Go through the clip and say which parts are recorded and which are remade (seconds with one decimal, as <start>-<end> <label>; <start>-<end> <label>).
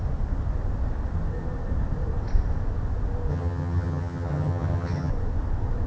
0.0-3.3 recorded; 3.3-5.1 remade; 5.1-5.9 recorded